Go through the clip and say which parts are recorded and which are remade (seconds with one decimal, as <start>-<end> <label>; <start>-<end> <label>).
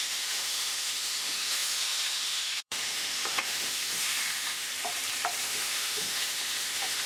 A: 0.0-4.7 remade; 4.7-5.4 recorded; 5.4-7.1 remade